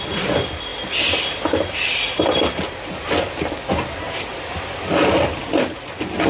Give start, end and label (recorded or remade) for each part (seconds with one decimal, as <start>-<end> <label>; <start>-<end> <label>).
0.0-6.3 recorded